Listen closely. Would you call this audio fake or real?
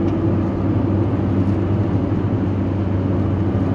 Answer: real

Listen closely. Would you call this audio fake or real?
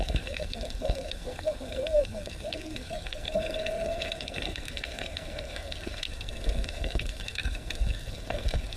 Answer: fake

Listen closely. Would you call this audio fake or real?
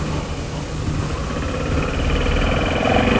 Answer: real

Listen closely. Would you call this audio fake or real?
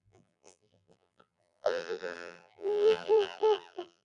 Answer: fake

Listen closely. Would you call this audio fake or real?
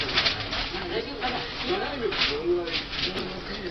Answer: real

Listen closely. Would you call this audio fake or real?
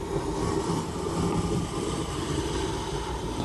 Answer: fake